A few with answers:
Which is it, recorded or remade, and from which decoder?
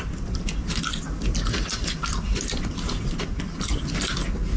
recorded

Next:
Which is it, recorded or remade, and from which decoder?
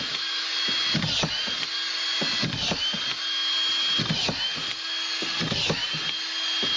recorded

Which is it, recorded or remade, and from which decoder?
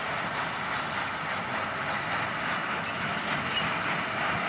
recorded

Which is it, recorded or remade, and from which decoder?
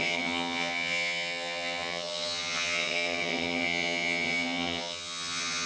remade, vocoder, HiFi-GAN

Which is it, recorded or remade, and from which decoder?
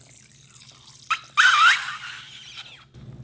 recorded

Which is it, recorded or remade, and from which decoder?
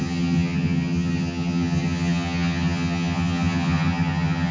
remade, vocoder, HiFi-GAN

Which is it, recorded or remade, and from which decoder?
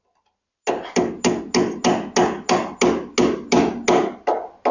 recorded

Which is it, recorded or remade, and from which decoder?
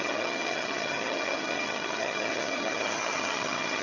remade, vocoder, HiFi-GAN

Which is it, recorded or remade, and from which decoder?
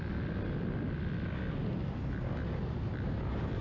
recorded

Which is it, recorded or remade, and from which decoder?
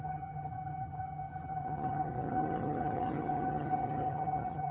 remade, vocoder, HiFi-GAN